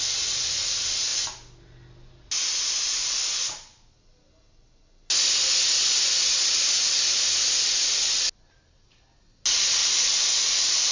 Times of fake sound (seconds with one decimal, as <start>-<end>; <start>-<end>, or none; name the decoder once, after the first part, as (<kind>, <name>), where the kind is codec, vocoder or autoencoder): none